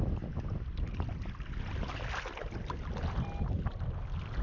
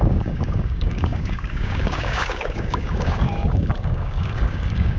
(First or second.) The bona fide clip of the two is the first